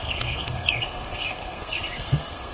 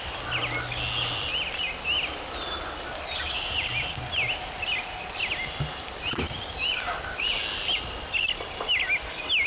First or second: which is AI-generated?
first